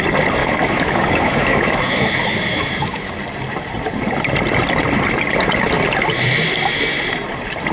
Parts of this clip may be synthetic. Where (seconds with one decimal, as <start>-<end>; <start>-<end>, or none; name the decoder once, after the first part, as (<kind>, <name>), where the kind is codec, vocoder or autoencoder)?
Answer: 0.4-3.1 (autoencoder, DAC-VAE)